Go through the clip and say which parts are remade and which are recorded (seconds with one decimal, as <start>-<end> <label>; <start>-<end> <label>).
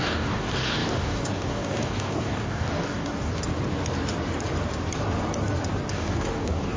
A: 0.0-3.3 remade; 3.3-5.9 recorded; 5.9-6.8 remade